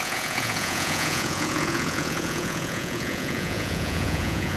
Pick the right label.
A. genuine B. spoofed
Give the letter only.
B